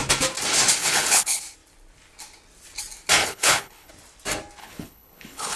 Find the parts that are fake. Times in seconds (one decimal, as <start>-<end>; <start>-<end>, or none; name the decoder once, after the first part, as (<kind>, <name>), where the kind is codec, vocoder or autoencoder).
0.8-1.4 (codec, HILCodec); 3.2-3.9; 4.6-5.6